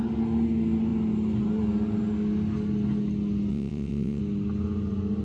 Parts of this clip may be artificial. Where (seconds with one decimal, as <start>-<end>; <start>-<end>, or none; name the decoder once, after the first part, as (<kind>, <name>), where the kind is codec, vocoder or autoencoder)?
3.5-4.2 (vocoder, WaveNeXt)